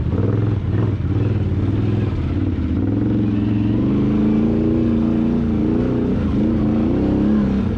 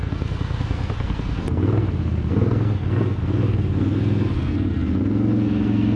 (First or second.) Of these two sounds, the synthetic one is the second